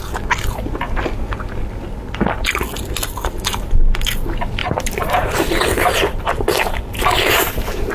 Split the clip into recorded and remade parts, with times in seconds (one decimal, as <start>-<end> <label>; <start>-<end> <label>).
0.0-4.6 recorded; 4.6-6.8 remade; 6.8-7.9 recorded